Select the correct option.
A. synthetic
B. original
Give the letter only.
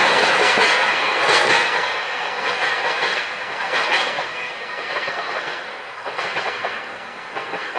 A